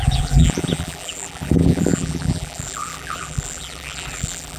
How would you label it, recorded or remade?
remade